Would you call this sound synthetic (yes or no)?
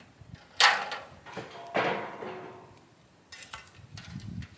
no